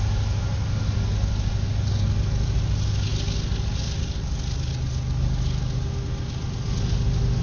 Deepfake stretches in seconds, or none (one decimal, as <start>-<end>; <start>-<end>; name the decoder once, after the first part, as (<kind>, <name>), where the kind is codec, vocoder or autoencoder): none

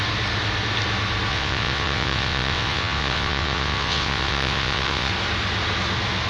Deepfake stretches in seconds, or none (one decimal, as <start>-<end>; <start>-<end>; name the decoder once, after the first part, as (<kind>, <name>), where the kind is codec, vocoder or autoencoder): 1.3-5.1 (vocoder, WaveNeXt)

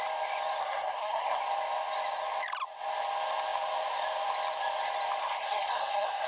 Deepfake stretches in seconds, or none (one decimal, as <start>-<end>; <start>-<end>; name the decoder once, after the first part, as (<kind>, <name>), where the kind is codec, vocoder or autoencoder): 0.6-1.4 (codec, SNAC); 5.2-6.3

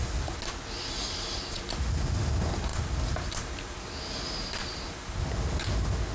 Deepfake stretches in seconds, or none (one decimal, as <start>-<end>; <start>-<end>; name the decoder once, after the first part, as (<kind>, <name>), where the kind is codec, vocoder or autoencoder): none

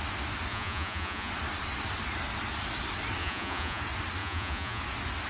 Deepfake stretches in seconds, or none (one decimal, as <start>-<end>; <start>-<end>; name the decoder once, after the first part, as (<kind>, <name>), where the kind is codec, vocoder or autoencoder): 0.5-1.3 (vocoder, Vocos); 3.2-3.8; 4.2-4.8

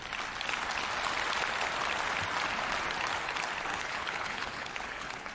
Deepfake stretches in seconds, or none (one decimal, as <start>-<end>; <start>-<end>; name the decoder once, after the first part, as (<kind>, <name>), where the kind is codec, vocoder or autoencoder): 3.7-5.3 (codec, HILCodec)

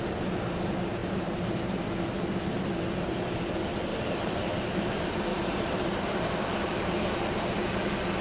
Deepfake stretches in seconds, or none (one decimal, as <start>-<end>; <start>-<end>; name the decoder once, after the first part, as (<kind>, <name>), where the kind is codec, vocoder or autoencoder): 1.0-1.9 (vocoder, BigVGAN v2); 3.9-4.4; 5.3-6.7

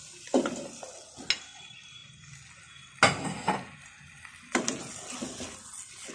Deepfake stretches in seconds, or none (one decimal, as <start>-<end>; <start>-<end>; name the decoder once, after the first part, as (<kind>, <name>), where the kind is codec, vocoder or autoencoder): none